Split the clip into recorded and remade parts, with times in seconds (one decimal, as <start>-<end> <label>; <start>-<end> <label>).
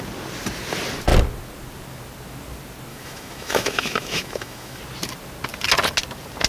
0.0-2.9 recorded; 2.9-4.8 remade; 4.8-6.5 recorded